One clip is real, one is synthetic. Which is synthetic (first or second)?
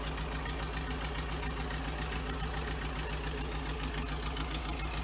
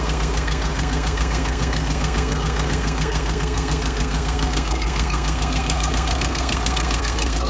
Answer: second